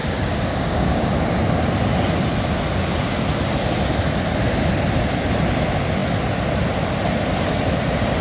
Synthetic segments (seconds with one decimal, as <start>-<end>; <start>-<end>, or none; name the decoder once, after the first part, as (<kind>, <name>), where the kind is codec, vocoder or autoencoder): 0.0-1.1 (codec, DAC)